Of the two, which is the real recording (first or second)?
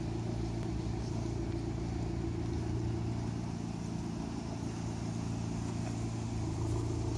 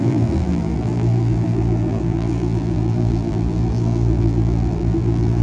first